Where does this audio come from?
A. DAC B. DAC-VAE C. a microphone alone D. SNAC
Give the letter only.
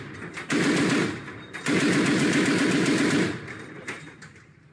C